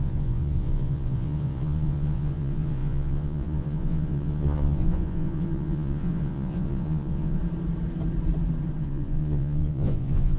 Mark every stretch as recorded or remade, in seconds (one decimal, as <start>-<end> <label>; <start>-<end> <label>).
0.0-7.4 remade; 7.4-8.8 recorded; 8.8-10.4 remade